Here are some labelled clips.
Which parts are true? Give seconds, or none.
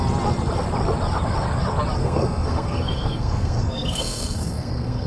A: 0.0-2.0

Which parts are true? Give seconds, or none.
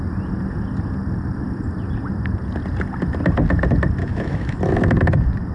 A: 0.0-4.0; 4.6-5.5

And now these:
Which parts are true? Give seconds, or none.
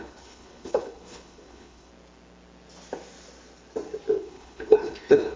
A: 1.9-4.2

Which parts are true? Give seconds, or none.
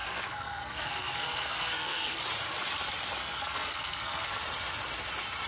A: 2.2-3.2; 4.4-5.5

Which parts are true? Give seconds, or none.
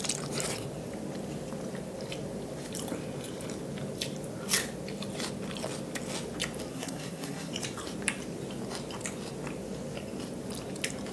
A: 0.0-6.7; 7.5-11.1